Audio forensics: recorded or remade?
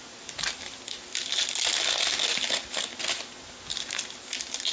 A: recorded